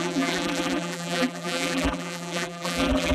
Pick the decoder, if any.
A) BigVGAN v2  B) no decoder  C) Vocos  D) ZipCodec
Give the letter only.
A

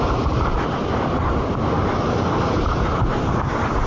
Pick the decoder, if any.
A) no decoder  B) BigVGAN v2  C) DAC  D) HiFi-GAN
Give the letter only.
A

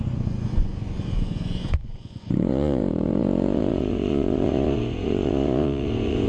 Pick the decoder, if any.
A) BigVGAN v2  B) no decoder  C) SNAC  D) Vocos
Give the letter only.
D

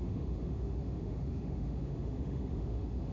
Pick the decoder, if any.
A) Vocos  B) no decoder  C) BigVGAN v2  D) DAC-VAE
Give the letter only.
D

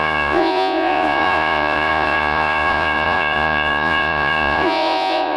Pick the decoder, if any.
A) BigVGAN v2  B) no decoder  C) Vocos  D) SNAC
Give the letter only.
C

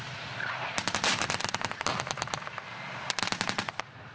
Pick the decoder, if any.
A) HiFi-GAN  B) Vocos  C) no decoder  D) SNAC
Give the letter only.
C